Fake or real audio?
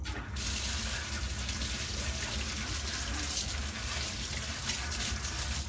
real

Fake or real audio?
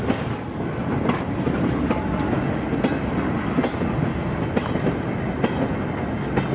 real